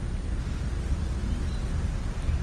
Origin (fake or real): real